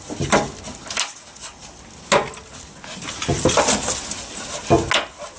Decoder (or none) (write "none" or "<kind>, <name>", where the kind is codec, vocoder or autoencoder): none